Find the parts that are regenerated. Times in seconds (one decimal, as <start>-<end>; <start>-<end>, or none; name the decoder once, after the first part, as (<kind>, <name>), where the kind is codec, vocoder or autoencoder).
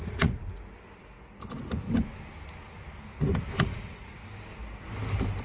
0.0-0.4 (vocoder, Vocos); 3.6-4.2